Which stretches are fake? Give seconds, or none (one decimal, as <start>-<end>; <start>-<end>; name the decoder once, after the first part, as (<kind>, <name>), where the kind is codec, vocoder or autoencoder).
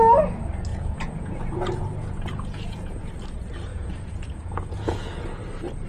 0.7-3.1 (vocoder, Vocos); 3.7-5.4